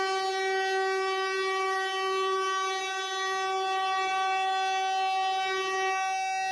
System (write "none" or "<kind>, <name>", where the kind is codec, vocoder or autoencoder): none